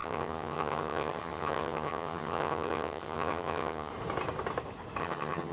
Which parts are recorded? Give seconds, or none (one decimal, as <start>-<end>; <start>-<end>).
3.9-5.0